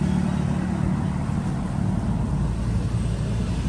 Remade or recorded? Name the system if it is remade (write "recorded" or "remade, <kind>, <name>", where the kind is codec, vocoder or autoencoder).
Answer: recorded